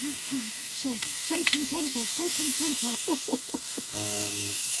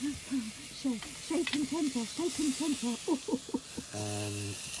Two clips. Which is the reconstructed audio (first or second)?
first